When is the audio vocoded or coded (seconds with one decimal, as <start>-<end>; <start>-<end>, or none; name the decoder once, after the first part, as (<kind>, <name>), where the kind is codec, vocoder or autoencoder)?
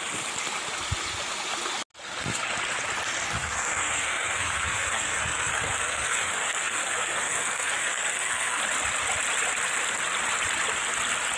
3.4-8.6 (codec, SNAC)